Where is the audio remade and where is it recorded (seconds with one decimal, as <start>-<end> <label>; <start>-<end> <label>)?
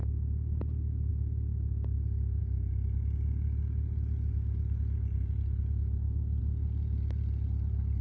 0.0-8.0 recorded